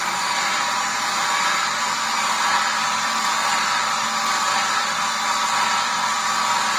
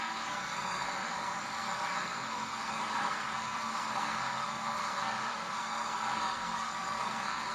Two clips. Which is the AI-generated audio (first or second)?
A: second